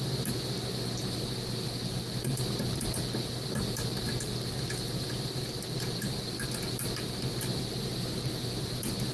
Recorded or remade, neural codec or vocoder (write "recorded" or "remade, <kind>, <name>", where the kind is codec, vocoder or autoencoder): recorded